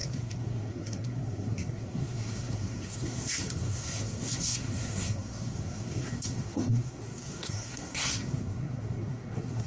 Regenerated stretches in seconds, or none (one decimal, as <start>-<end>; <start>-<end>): 0.0-9.7